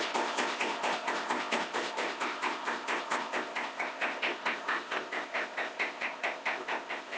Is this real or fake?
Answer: fake